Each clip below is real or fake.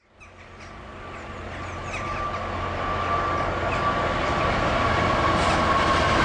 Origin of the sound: real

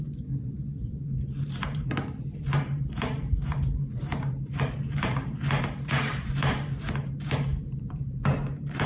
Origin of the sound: fake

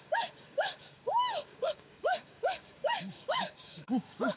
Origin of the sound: fake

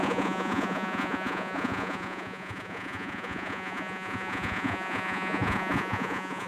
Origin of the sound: fake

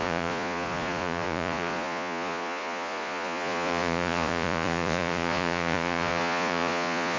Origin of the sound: fake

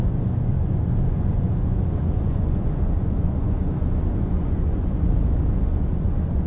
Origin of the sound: fake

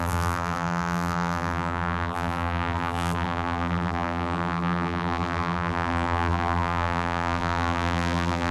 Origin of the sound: fake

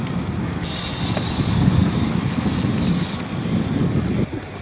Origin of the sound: real